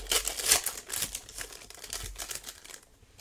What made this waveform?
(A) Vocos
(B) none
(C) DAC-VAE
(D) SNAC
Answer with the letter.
B